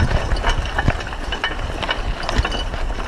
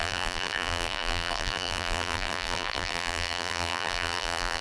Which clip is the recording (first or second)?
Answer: first